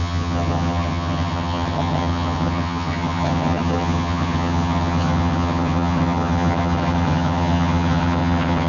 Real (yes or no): no